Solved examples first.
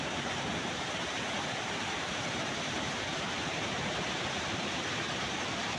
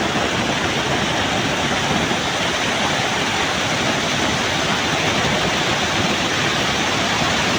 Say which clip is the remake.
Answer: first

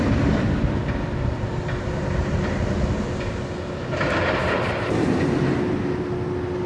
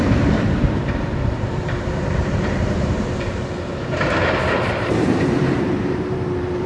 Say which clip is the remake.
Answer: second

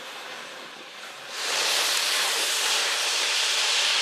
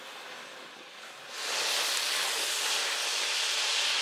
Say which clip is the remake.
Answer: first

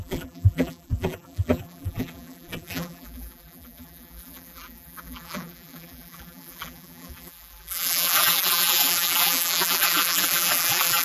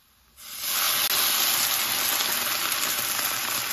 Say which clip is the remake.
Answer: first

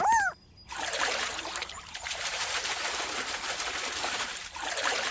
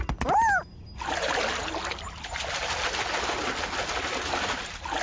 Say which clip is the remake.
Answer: first